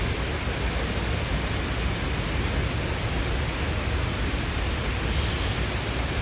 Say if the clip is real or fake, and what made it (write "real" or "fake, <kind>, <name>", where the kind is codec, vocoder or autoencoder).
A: real